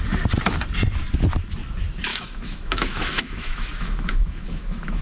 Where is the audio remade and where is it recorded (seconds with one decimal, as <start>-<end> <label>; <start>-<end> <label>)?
0.0-2.1 recorded; 2.1-5.0 remade